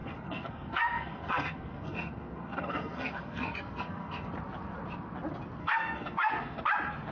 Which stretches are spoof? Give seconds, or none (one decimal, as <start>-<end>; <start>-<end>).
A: 0.0-4.3; 5.6-6.6